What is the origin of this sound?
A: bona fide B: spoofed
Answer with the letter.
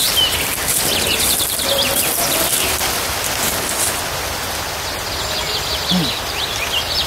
A